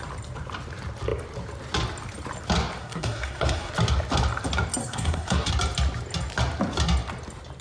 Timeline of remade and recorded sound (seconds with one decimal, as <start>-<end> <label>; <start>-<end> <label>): 0.0-2.8 recorded; 2.8-3.7 remade; 3.7-4.8 recorded; 4.8-5.5 remade; 5.5-7.6 recorded